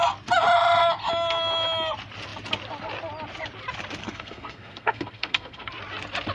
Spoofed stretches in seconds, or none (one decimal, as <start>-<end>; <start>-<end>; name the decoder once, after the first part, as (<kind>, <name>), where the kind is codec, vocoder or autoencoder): 4.0-5.7 (codec, SNAC)